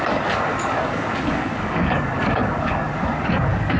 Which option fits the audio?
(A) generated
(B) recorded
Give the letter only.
A